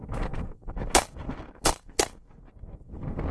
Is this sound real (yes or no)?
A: no